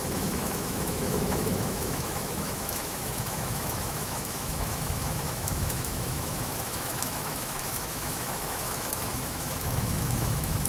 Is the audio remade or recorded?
remade